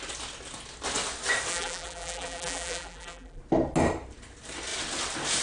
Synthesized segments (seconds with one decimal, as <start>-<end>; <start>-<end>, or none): 1.5-3.4